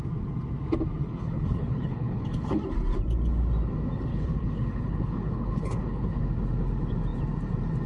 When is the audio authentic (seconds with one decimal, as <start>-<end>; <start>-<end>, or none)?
0.0-1.0; 2.6-4.1; 6.2-7.9